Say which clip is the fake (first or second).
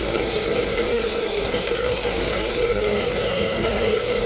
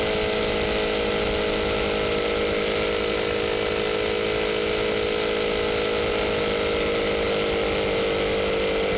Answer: first